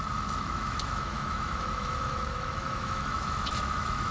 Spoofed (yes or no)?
yes